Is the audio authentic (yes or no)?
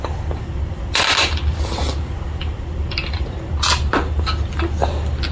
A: yes